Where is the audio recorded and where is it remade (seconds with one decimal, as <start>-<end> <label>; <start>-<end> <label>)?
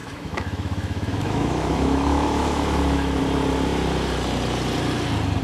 0.0-3.2 remade; 3.2-5.4 recorded